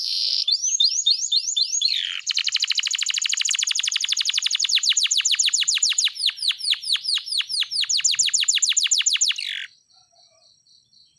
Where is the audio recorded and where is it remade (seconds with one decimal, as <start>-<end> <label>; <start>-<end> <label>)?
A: 0.0-2.4 remade; 2.4-3.5 recorded; 3.5-7.3 remade; 7.3-10.5 recorded; 10.5-11.2 remade